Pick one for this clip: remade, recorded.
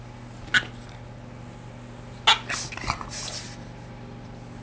recorded